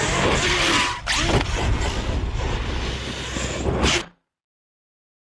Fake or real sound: real